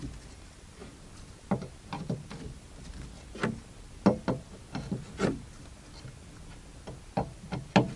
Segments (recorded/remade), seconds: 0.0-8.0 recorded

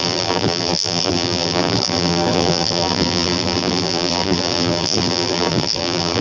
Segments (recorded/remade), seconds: 0.0-6.2 remade

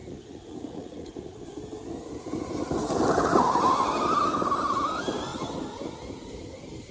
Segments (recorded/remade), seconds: 0.0-1.4 remade; 1.4-6.9 recorded

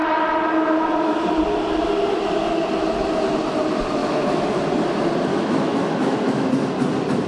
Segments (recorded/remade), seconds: 0.0-4.0 recorded; 4.0-4.6 remade; 4.6-5.3 recorded; 5.3-6.5 remade; 6.5-7.3 recorded

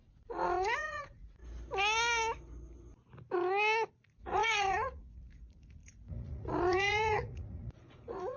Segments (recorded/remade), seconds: 0.0-1.4 remade; 1.4-3.9 recorded; 3.9-8.4 remade

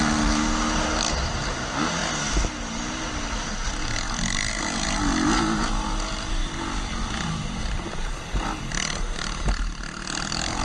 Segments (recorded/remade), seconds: 0.0-10.6 recorded

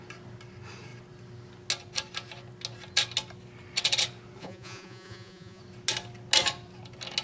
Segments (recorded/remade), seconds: 0.0-4.4 recorded; 4.4-5.6 remade; 5.6-7.2 recorded